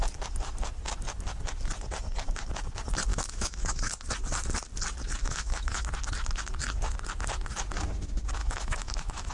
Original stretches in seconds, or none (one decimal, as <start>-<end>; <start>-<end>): 0.0-3.1; 3.9-5.2; 5.8-8.4